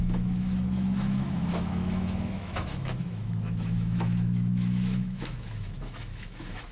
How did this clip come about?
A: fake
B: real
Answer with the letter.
A